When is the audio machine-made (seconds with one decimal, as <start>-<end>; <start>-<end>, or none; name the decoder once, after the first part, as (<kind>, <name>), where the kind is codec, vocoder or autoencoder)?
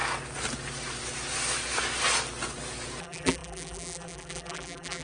3.0-5.0 (vocoder, BigVGAN v2)